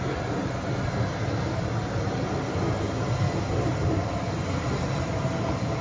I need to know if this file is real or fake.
real